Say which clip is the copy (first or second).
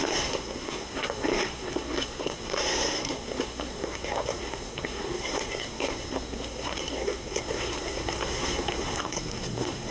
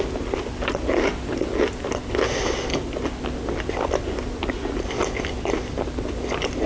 first